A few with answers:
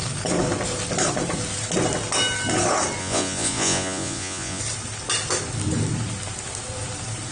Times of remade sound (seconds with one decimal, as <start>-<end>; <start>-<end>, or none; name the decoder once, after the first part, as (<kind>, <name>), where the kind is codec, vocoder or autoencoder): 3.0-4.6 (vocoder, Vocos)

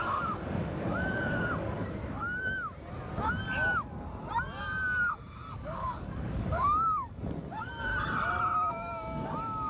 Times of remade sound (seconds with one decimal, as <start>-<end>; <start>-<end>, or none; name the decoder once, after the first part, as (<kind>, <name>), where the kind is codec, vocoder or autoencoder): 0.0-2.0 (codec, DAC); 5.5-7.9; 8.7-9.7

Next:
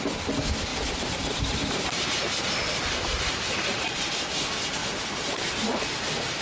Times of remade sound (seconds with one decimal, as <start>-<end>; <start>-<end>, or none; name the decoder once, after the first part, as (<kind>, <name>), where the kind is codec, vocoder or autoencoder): 0.7-4.0 (vocoder, BigVGAN v2); 4.8-6.4

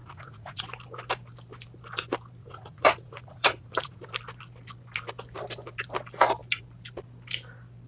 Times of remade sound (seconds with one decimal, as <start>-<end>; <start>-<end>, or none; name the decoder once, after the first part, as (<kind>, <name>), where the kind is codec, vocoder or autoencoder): 0.0-0.6 (vocoder, Vocos); 2.4-4.0

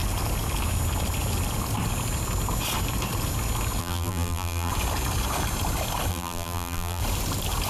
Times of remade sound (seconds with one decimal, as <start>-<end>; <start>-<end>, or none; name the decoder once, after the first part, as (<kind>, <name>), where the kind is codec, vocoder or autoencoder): 3.8-4.7 (vocoder, BigVGAN v2); 6.1-7.0